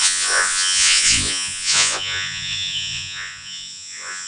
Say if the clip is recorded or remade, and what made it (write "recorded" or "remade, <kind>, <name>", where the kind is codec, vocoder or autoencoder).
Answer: remade, vocoder, Vocos